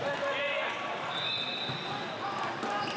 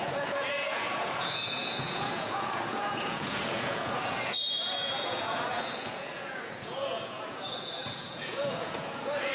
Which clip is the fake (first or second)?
second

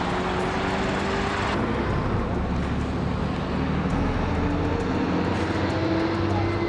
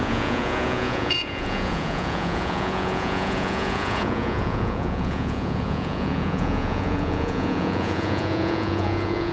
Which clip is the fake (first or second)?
second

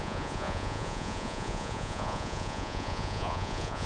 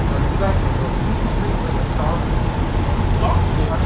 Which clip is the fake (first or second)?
first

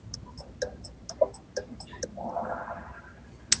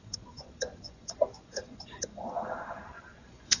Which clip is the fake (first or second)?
second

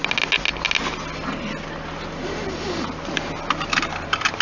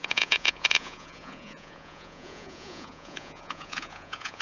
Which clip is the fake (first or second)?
second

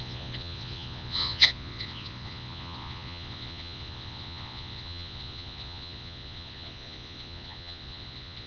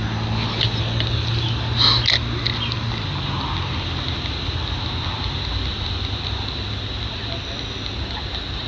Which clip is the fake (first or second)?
first